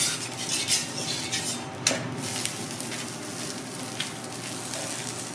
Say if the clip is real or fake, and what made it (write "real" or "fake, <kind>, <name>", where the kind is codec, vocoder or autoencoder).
real